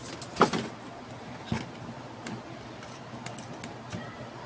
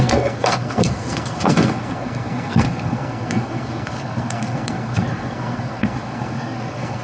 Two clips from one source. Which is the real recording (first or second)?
first